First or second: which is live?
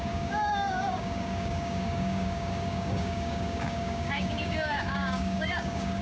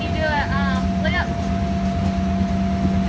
second